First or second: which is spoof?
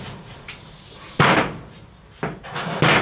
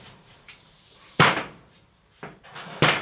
second